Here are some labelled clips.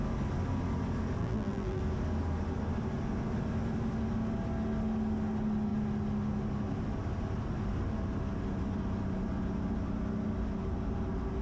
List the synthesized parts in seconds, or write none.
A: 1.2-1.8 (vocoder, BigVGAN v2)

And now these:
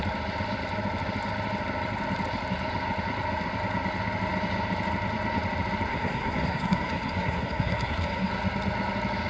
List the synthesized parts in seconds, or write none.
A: 5.9-8.3 (codec, SNAC)

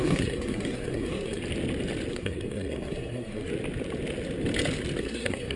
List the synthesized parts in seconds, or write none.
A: 0.0-1.4 (codec, SNAC); 2.1-3.5; 5.0-5.6

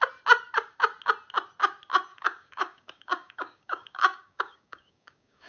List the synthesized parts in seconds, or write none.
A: 2.1-5.5 (codec, DAC)

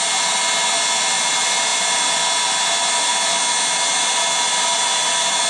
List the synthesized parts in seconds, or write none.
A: none

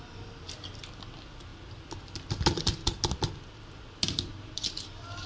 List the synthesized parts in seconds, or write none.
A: none

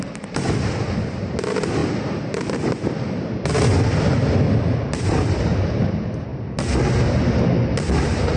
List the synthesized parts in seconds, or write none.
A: none

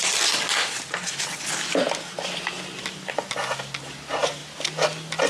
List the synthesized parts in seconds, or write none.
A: none